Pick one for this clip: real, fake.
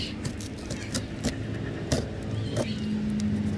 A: real